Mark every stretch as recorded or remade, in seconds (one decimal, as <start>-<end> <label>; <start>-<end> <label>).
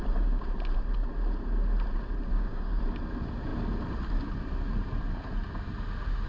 0.0-2.3 recorded; 2.3-2.8 remade; 2.8-6.3 recorded